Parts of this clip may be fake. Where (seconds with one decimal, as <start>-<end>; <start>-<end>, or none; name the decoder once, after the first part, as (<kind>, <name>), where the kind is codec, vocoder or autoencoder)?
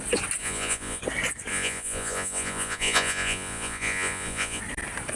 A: 0.4-1.0 (vocoder, Vocos); 1.5-4.6